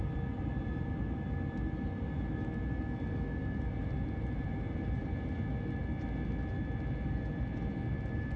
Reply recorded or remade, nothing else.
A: recorded